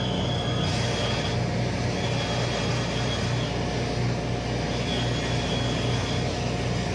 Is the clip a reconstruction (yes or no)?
no